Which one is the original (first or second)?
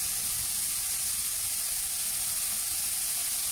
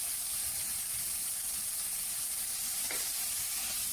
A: first